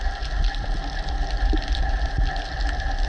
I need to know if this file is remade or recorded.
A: recorded